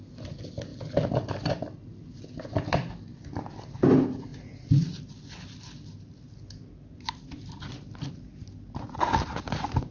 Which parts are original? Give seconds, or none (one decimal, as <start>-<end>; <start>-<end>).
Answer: 0.0-9.9